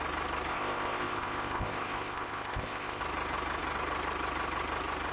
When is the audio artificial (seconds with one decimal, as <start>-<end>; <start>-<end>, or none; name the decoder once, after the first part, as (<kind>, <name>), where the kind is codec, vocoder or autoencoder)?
0.5-3.0 (codec, ZipCodec)